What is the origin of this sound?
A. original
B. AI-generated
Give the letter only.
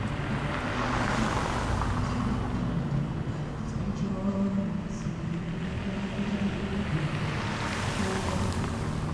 A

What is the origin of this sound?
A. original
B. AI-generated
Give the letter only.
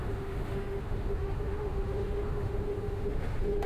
B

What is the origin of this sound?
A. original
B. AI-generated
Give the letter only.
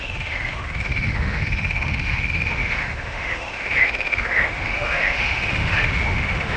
B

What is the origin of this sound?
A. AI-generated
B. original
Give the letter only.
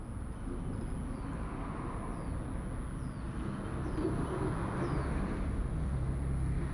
B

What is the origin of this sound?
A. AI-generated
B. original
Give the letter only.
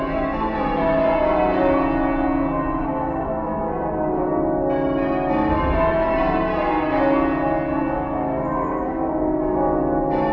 B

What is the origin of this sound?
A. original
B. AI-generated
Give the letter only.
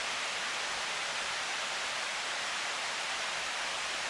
A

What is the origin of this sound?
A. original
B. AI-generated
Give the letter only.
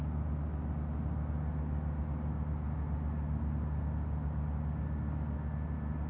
A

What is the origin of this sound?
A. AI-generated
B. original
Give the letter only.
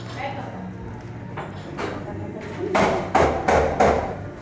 B